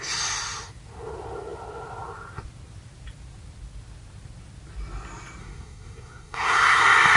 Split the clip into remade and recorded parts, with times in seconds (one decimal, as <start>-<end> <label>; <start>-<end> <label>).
0.0-5.4 recorded; 5.4-6.8 remade; 6.8-7.2 recorded